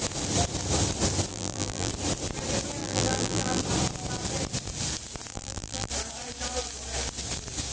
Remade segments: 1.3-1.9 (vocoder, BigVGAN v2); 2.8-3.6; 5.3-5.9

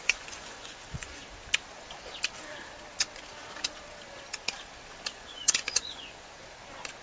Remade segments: 0.0-1.2 (vocoder, Vocos); 5.1-6.4

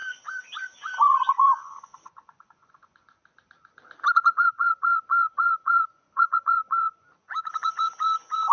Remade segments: 0.6-3.2 (vocoder, Vocos); 4.1-8.5

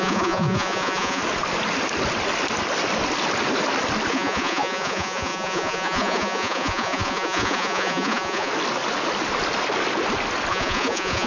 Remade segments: 0.0-1.2 (vocoder, Vocos); 4.1-8.5; 10.5-11.3

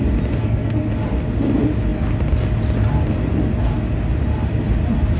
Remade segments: 0.4-0.9 (codec, SNAC)

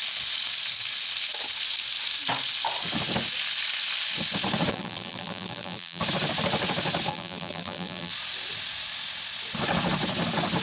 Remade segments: 4.7-6.0 (vocoder, BigVGAN v2); 7.1-8.1

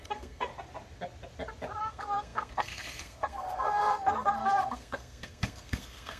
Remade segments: 0.0-0.5 (codec, SNAC); 1.8-6.2

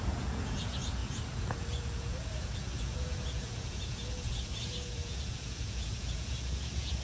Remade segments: 0.0-7.0 (vocoder, Vocos)